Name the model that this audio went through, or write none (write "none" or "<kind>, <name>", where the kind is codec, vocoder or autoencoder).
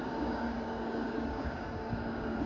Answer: codec, DAC